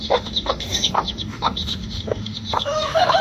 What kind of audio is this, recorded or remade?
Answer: remade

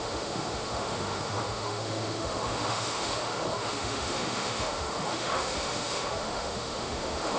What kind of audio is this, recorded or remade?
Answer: remade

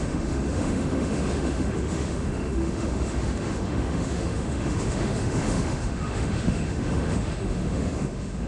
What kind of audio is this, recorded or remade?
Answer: remade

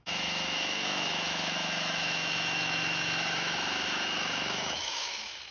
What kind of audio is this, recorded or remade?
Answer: remade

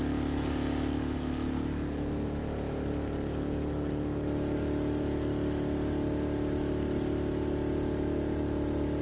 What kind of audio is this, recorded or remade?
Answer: recorded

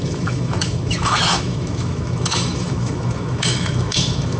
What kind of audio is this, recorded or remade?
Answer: remade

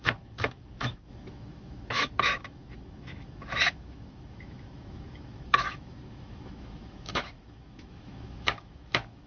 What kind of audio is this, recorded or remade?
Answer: remade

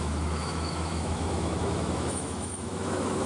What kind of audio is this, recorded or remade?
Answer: remade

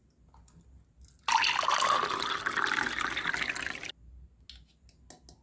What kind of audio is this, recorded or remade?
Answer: recorded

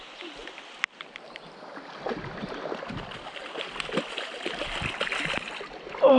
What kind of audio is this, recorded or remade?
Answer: recorded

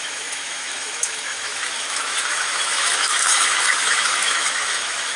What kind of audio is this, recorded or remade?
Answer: remade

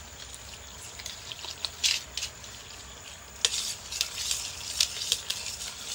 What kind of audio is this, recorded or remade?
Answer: recorded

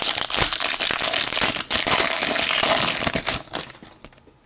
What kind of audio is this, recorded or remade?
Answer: recorded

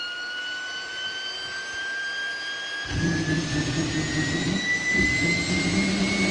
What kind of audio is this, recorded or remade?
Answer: recorded